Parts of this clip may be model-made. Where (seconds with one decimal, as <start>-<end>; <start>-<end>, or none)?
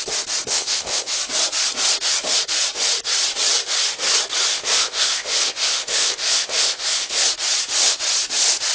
0.5-1.2; 4.5-7.2